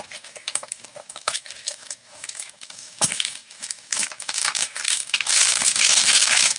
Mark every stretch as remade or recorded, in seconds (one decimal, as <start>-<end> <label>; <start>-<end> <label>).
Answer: 0.0-6.6 remade